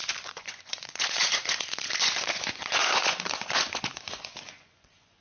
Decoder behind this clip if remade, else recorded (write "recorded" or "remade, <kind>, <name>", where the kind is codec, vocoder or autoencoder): remade, vocoder, Vocos